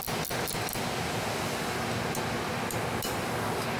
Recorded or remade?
recorded